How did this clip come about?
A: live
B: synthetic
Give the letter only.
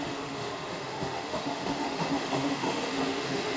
B